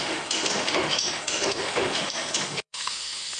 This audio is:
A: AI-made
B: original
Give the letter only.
A